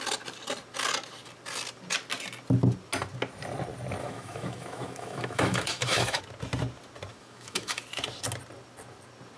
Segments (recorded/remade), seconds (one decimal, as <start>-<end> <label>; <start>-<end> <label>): 0.0-4.0 recorded; 4.0-6.2 remade; 6.2-7.1 recorded; 7.1-7.8 remade; 7.8-9.4 recorded